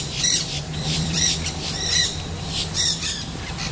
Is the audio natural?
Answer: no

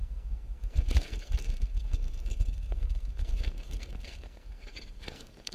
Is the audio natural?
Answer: no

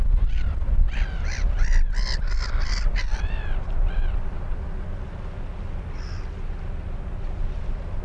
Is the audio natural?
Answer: yes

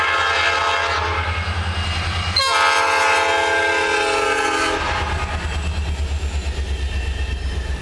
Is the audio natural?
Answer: yes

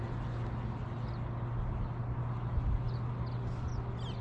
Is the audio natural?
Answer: yes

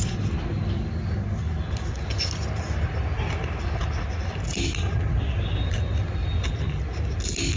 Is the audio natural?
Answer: yes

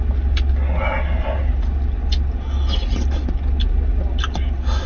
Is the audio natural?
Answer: yes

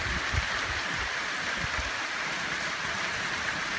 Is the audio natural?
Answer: yes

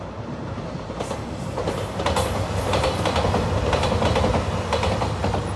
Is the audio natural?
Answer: yes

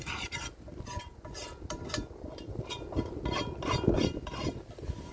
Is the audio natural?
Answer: no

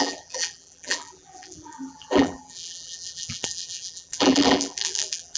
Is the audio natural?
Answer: no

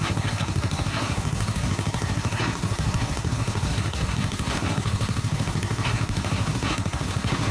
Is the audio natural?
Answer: no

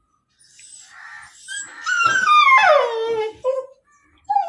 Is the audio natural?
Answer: yes